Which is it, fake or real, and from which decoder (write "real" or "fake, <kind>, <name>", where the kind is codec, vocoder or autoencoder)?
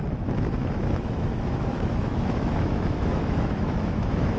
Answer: fake, autoencoder, DAC-VAE